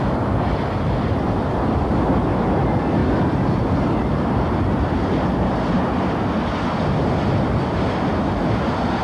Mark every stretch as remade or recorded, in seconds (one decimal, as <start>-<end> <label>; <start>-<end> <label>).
0.0-9.0 recorded